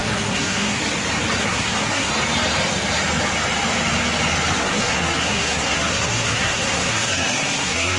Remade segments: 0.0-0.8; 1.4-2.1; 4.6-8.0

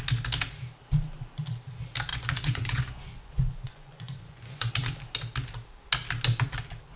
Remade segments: 2.1-4.7